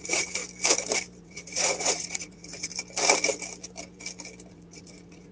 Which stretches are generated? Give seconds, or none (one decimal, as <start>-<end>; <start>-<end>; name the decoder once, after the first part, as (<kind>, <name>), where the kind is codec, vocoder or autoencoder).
0.0-0.4 (vocoder, Vocos); 1.2-2.7; 4.5-5.3